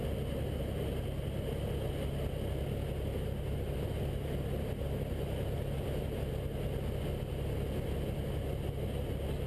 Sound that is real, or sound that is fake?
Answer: real